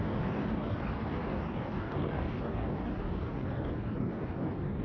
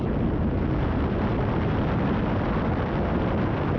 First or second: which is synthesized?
first